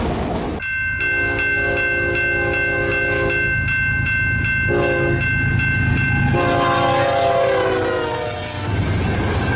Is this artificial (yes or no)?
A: no